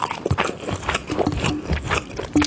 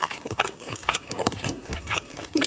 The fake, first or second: second